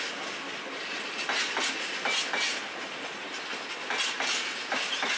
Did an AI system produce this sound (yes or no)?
no